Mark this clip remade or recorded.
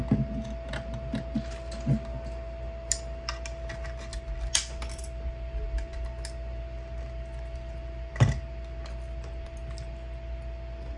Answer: recorded